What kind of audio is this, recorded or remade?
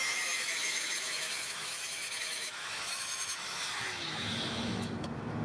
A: remade